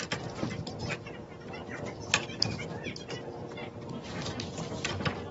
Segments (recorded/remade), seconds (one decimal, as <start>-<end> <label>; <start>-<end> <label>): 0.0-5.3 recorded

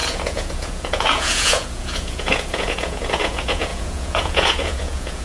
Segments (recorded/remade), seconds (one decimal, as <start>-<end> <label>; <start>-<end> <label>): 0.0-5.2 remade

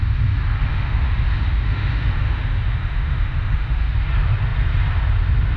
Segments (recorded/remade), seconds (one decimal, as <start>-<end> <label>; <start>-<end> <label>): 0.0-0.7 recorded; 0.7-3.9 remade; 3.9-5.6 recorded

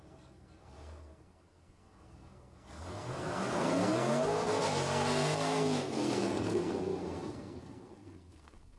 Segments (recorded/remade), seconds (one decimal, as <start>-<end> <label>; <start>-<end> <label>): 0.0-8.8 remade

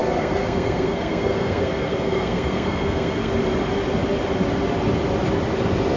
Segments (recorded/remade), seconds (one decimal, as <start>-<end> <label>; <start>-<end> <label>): 0.0-3.3 remade; 3.3-6.0 recorded

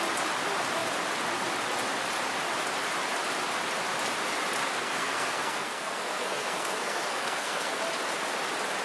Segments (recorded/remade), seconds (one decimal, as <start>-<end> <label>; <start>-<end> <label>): 0.0-4.6 recorded; 4.6-7.8 remade; 7.8-8.8 recorded

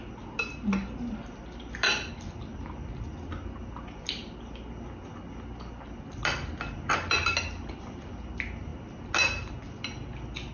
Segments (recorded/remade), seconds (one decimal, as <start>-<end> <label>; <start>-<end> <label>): 0.0-10.5 recorded